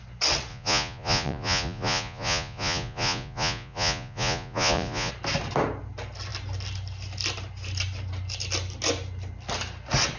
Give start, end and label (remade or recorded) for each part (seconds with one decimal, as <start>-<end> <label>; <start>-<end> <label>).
0.0-0.5 recorded; 0.5-5.1 remade; 5.1-10.2 recorded